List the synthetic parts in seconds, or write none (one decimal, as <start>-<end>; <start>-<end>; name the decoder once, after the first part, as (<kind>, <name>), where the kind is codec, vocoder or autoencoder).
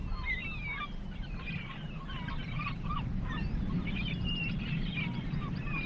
0.0-2.5 (vocoder, BigVGAN v2)